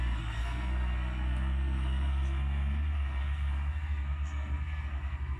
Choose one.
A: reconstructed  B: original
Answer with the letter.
A